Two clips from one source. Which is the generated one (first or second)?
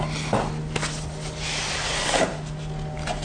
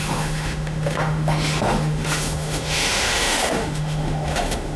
second